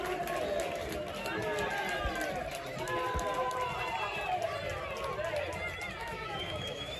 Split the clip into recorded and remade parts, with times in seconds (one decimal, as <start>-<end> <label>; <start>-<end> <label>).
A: 0.0-6.0 recorded; 6.0-7.0 remade